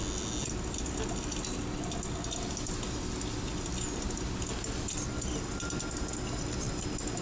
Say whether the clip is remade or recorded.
recorded